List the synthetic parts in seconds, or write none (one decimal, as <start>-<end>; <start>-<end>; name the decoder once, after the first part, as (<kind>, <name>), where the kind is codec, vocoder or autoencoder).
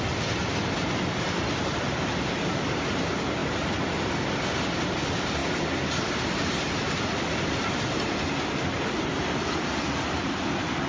none